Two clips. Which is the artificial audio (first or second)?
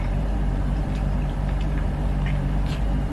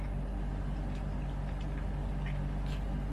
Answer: first